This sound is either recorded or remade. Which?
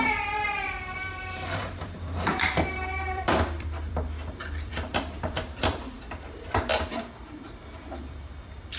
remade